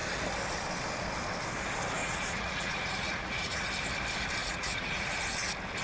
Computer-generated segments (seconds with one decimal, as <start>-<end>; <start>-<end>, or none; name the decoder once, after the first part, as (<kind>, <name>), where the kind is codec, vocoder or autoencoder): 2.0-3.7 (vocoder, Vocos); 4.4-5.2